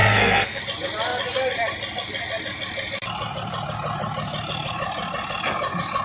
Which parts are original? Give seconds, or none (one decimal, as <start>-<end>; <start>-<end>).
0.6-6.0